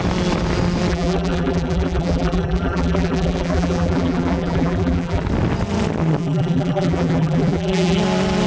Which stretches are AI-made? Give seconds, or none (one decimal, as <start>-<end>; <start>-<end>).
0.9-5.2; 6.2-8.0